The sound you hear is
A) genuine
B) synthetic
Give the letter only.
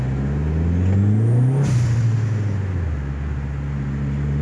A